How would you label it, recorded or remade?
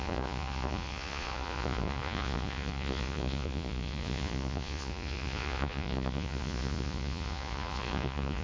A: remade